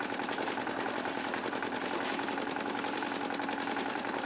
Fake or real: fake